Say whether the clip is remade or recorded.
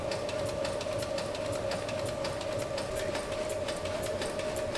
recorded